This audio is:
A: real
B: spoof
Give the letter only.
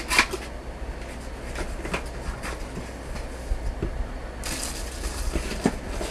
A